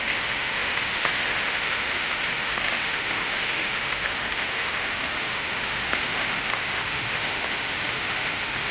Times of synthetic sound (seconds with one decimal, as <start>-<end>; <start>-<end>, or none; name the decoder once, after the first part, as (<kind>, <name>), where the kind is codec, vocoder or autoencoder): 0.0-8.7 (autoencoder, DAC-VAE)